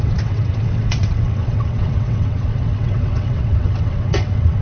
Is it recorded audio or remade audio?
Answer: remade